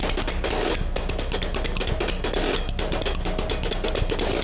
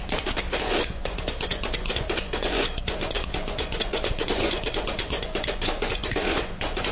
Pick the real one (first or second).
first